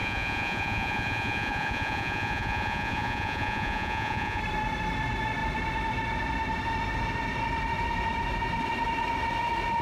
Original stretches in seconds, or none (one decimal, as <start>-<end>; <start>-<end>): 4.4-9.8